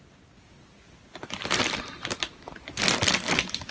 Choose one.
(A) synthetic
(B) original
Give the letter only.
B